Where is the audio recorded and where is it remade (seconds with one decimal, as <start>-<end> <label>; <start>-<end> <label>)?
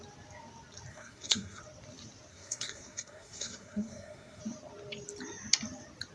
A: 0.0-0.9 recorded; 0.9-1.6 remade; 1.6-2.3 recorded; 2.3-4.4 remade; 4.4-6.1 recorded